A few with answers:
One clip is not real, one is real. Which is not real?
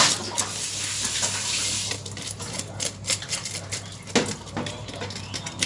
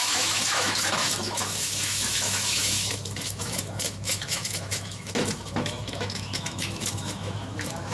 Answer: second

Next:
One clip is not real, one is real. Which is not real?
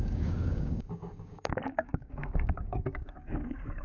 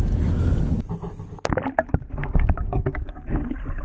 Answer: first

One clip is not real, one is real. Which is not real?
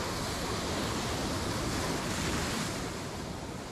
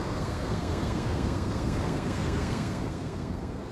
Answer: second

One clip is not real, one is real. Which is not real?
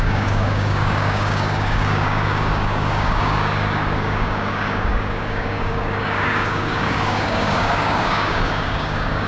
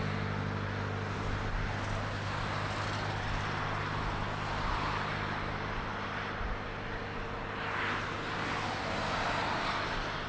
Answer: first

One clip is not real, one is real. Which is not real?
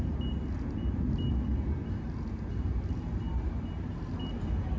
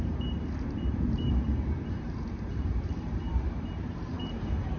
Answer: second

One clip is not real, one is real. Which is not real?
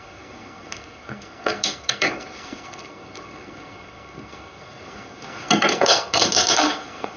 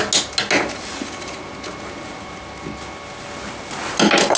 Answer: first